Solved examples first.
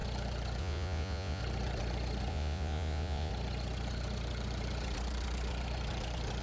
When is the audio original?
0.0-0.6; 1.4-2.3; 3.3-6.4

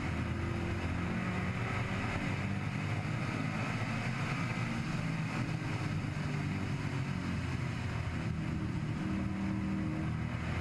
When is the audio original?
0.0-10.6

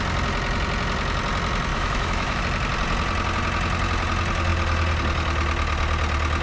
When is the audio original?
0.0-1.7; 2.4-6.4